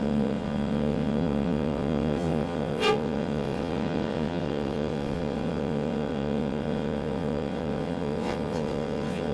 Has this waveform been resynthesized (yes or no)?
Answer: yes